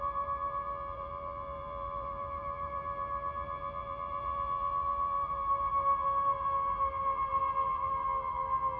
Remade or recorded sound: remade